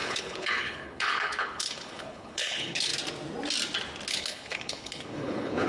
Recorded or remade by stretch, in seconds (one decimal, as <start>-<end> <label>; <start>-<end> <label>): 0.0-2.9 remade; 2.9-4.1 recorded; 4.1-5.7 remade